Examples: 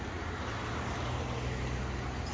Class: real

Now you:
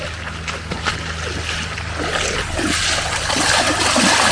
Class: real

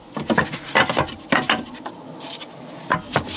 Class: real